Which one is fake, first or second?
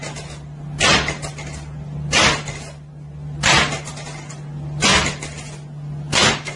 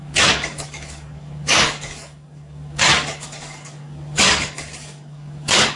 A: second